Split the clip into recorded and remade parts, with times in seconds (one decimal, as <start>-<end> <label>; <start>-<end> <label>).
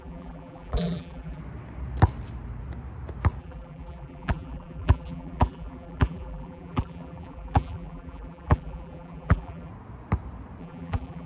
0.0-1.4 remade; 1.4-3.4 recorded; 3.4-9.7 remade; 9.7-10.6 recorded; 10.6-11.3 remade